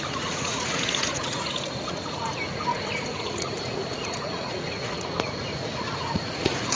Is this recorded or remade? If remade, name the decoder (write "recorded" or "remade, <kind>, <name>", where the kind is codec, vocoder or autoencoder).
remade, vocoder, Vocos